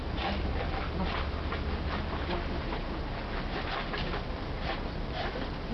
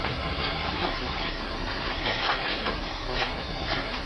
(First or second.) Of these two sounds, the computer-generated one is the second